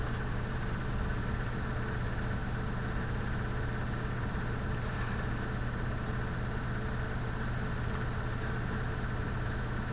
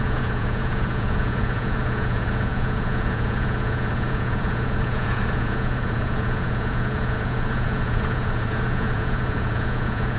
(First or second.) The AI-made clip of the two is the second